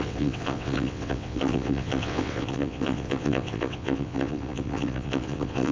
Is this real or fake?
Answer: fake